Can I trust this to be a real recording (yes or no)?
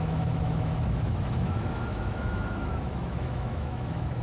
no